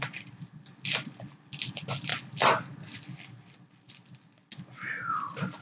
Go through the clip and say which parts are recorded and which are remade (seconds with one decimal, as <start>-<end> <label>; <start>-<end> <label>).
0.0-5.6 recorded